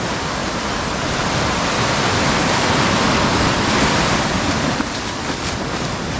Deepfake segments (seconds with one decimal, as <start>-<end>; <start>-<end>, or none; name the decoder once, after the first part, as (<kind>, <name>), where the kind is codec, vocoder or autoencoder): 2.4-6.2 (vocoder, BigVGAN v2)